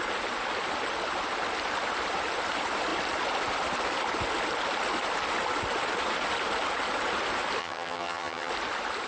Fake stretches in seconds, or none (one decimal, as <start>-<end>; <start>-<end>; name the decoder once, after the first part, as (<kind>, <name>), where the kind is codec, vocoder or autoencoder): 7.6-8.5 (vocoder, HiFi-GAN)